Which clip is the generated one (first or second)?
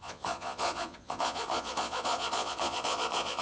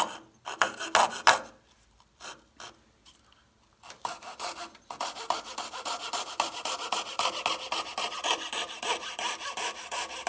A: first